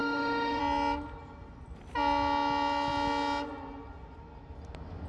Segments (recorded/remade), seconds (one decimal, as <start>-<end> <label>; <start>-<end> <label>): 0.0-0.6 remade; 0.6-5.1 recorded